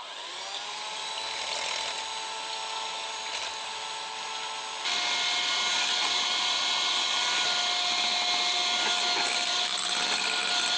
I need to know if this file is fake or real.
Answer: real